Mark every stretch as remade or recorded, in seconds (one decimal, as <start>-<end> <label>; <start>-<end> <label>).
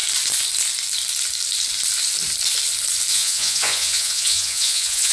0.0-3.1 recorded; 3.1-5.1 remade